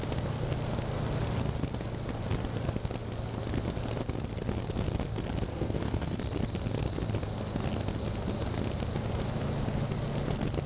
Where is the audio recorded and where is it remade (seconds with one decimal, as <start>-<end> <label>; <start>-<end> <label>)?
0.0-5.5 recorded; 5.5-6.2 remade; 6.2-10.7 recorded